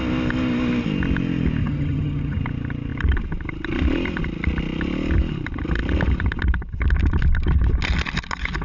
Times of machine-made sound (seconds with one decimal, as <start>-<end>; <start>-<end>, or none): 1.6-2.4